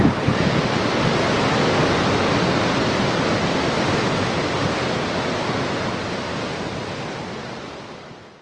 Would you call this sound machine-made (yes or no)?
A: no